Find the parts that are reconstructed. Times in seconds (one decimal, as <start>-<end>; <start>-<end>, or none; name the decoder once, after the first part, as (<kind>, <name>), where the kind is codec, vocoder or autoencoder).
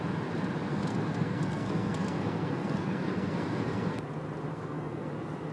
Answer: 0.7-4.0 (codec, SNAC); 4.5-5.1